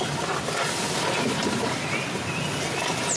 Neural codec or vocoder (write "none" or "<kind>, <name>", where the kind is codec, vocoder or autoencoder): none